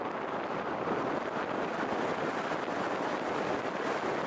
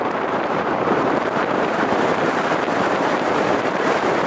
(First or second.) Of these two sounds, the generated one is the second